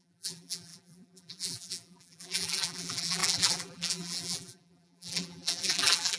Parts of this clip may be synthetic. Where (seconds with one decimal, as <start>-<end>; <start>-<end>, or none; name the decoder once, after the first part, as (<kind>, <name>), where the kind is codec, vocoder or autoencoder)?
0.0-6.2 (vocoder, BigVGAN v2)